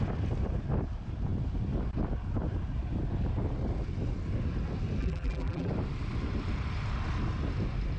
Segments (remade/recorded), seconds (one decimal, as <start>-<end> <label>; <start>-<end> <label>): 0.0-5.0 recorded; 5.0-5.7 remade; 5.7-8.0 recorded